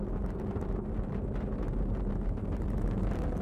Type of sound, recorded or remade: recorded